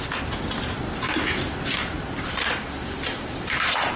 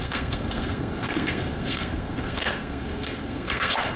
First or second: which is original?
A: first